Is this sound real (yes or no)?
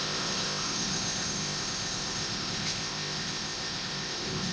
no